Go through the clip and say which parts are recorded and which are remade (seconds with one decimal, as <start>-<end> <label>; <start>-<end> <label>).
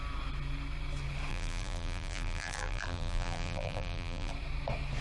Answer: 0.0-1.3 recorded; 1.3-4.3 remade; 4.3-5.0 recorded